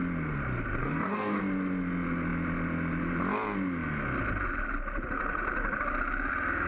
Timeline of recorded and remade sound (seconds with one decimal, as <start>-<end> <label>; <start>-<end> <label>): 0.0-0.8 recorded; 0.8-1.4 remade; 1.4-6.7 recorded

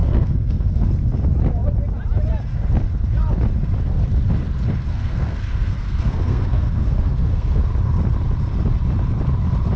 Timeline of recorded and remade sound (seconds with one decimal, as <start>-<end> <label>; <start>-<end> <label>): 0.0-0.9 remade; 0.9-4.9 recorded; 4.9-7.6 remade; 7.6-9.8 recorded

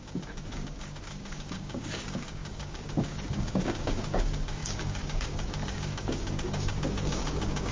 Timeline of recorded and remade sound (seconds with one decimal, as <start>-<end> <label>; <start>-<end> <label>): 0.0-7.7 remade

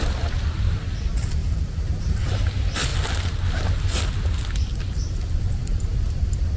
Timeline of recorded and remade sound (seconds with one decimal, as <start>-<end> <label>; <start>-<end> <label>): 0.0-1.4 recorded; 1.4-2.3 remade; 2.3-6.6 recorded

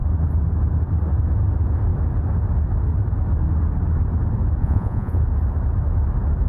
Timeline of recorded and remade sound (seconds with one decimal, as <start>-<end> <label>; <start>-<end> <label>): 0.0-4.6 recorded; 4.6-5.2 remade; 5.2-6.5 recorded

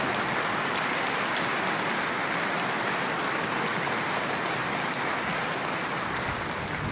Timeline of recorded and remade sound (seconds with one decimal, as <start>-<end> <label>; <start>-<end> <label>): 0.0-6.9 recorded

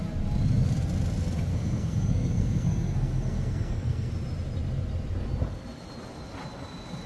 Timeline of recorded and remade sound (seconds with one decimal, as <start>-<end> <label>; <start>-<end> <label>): 0.0-1.5 recorded; 1.5-4.1 remade; 4.1-7.1 recorded

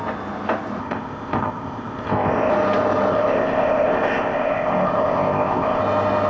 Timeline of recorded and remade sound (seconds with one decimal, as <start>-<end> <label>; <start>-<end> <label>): 0.0-0.8 recorded; 0.8-2.5 remade; 2.5-3.1 recorded; 3.1-5.8 remade; 5.8-6.3 recorded